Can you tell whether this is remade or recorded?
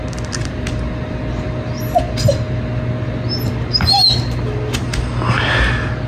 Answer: recorded